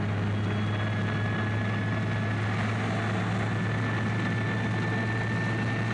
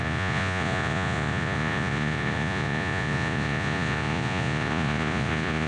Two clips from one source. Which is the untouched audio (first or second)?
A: first